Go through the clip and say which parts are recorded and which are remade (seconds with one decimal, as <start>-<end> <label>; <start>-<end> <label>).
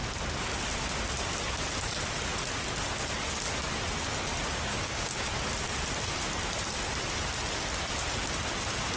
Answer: 0.0-4.7 recorded; 4.7-5.3 remade; 5.3-9.0 recorded